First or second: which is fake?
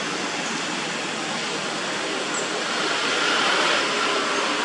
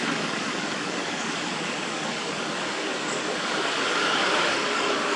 second